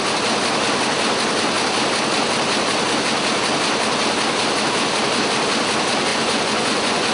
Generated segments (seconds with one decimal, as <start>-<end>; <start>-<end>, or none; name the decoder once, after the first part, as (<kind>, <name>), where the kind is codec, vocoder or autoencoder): 6.1-7.1 (vocoder, Vocos)